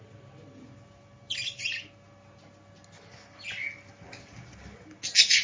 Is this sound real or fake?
real